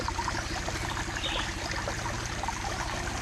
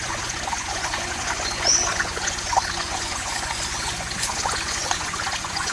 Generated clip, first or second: second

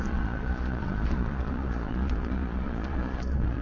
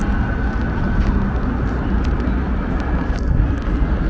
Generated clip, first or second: first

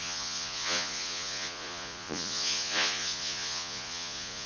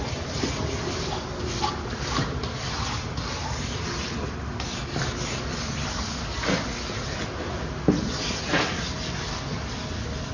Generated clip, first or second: first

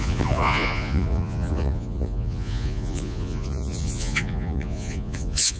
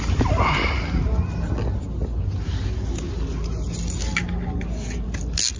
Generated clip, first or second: first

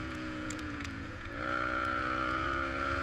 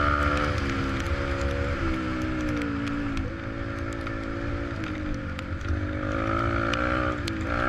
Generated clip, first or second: first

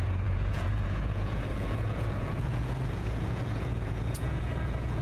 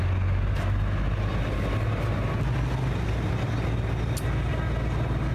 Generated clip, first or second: first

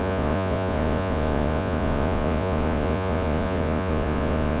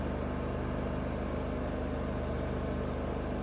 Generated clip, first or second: first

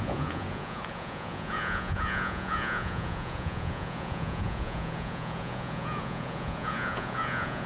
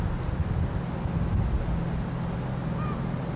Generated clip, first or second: first